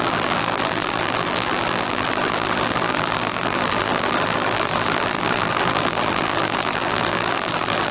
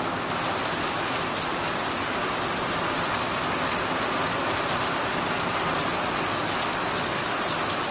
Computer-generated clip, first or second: first